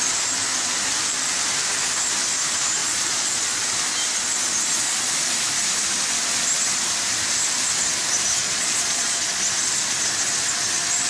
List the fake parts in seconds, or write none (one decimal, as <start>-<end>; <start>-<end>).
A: 2.8-3.6; 8.4-9.4